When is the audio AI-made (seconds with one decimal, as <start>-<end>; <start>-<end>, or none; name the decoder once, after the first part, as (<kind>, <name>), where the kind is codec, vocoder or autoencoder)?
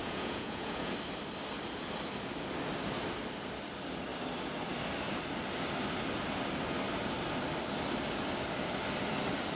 0.0-0.9 (vocoder, Vocos)